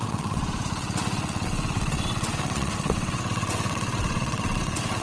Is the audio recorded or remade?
remade